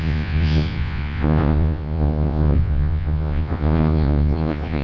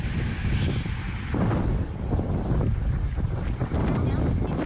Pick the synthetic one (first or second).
first